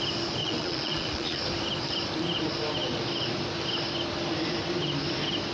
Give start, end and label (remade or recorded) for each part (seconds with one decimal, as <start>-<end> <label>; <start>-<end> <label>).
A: 0.0-0.4 recorded; 0.4-1.4 remade; 1.4-5.5 recorded